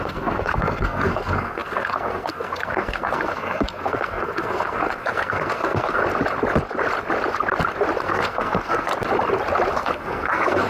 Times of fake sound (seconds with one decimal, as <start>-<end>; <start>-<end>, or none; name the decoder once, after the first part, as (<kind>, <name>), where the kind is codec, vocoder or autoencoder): 0.0-6.0 (codec, SNAC); 8.0-8.9; 9.7-10.7